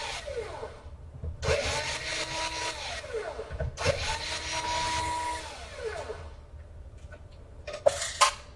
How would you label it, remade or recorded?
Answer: recorded